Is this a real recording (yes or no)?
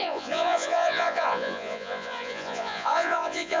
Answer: no